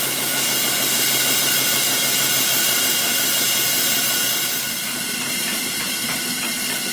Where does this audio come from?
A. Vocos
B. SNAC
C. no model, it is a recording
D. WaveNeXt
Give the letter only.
C